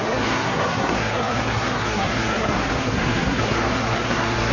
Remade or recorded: remade